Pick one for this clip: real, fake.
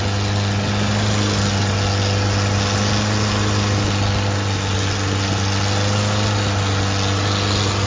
real